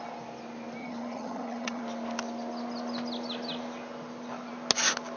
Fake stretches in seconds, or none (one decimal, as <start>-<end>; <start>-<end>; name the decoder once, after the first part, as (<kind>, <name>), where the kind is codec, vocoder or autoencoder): 0.8-1.8 (vocoder, HiFi-GAN)